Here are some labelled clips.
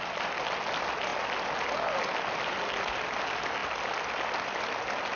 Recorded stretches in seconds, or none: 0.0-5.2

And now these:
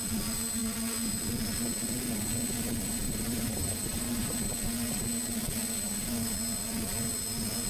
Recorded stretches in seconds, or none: 0.0-2.9; 4.3-7.7